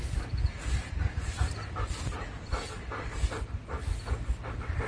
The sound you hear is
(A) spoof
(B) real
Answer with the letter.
B